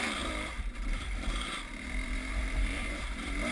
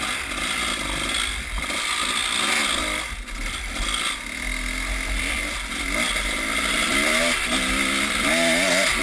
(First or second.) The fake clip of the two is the first